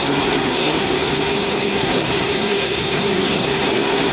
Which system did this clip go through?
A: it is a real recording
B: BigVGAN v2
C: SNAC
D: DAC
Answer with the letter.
C